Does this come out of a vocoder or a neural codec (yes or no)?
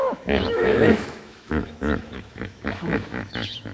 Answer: yes